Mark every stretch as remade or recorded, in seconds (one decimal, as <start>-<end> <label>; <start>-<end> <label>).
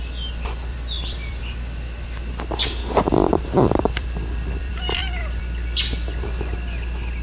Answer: 0.0-0.7 recorded; 0.7-2.3 remade; 2.3-2.8 recorded; 2.8-5.4 remade; 5.4-7.2 recorded